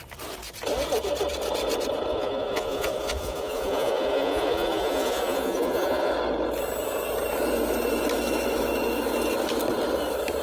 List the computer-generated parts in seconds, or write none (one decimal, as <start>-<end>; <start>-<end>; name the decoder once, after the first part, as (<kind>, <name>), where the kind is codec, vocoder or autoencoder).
2.1-6.1 (vocoder, Vocos)